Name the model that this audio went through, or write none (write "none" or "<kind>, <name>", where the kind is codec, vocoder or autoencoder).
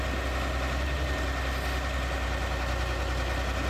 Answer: none